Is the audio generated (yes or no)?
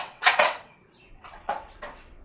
yes